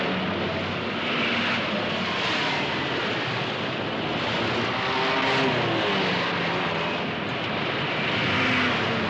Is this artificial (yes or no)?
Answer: no